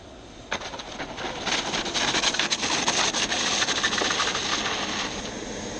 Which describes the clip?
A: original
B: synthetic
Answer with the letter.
A